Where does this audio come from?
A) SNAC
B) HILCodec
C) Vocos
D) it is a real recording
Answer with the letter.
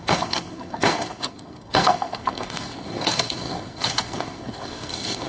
A